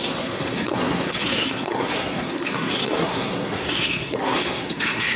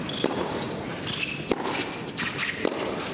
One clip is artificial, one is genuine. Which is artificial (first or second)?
first